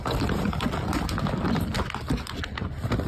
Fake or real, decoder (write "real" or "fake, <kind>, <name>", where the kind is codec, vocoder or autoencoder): real